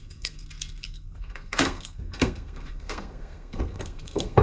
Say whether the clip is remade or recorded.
remade